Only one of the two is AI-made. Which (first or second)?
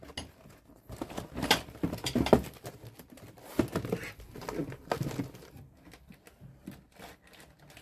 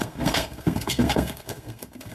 second